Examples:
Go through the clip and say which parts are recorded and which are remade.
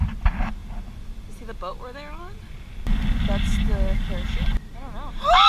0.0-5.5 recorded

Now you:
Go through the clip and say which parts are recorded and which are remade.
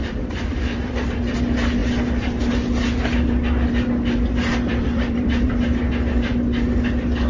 0.0-1.0 remade; 1.0-4.5 recorded; 4.5-5.8 remade; 5.8-7.3 recorded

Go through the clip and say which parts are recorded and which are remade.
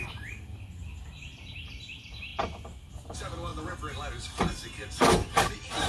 0.0-2.3 remade; 2.3-2.9 recorded; 2.9-3.5 remade; 3.5-4.1 recorded; 4.1-5.9 remade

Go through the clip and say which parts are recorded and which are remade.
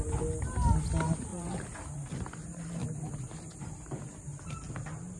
0.0-1.3 recorded; 1.3-4.4 remade; 4.4-5.2 recorded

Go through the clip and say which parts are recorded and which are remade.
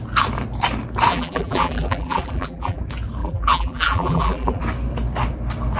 0.0-1.1 recorded; 1.1-2.8 remade; 2.8-3.2 recorded; 3.2-4.6 remade; 4.6-5.8 recorded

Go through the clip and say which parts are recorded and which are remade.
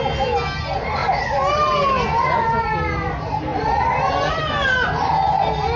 0.0-3.5 recorded; 3.5-4.4 remade; 4.4-5.8 recorded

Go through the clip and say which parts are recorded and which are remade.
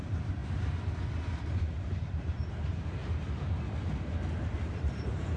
0.0-0.4 remade; 0.4-1.5 recorded; 1.5-3.0 remade; 3.0-4.7 recorded; 4.7-5.4 remade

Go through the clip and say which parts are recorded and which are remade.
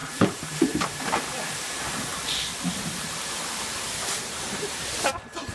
0.0-5.5 remade